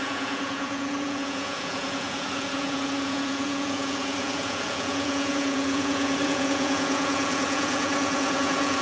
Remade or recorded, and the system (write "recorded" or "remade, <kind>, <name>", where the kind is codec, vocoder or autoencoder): remade, vocoder, Vocos